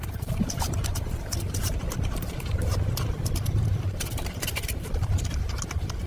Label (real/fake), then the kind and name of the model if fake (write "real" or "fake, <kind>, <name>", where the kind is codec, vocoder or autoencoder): fake, vocoder, BigVGAN v2